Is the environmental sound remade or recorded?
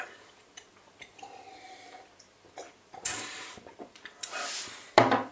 remade